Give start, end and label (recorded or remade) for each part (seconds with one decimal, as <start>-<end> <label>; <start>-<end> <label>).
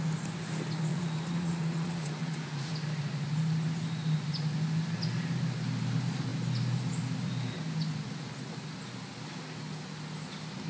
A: 0.0-0.9 recorded; 0.9-2.7 remade; 2.7-10.7 recorded